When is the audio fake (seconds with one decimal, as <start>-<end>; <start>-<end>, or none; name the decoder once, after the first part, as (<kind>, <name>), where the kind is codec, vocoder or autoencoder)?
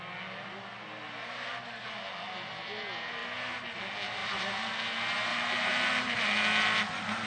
5.3-6.3 (vocoder, BigVGAN v2)